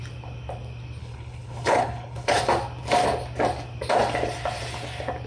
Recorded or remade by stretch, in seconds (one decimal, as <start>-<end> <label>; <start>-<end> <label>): 0.0-1.0 recorded; 1.0-2.4 remade; 2.4-5.3 recorded